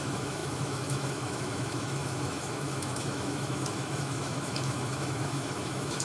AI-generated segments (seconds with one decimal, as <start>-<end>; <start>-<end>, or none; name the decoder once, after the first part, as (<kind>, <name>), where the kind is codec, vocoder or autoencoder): 0.0-6.0 (autoencoder, DAC-VAE)